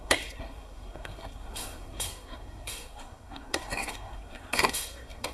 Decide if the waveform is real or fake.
fake